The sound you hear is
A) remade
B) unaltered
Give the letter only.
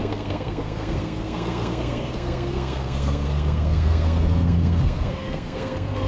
A